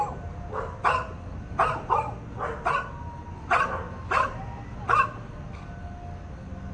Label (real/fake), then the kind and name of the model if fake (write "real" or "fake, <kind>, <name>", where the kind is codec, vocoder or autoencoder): real